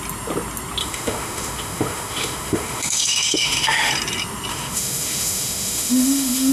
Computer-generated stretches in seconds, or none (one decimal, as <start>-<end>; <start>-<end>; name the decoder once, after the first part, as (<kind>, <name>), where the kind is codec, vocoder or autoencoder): 0.8-3.9 (autoencoder, DAC-VAE); 4.5-6.5